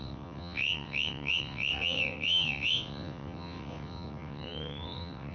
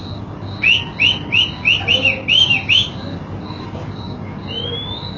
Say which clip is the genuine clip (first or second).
second